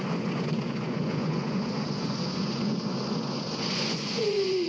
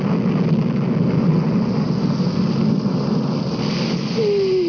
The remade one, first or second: first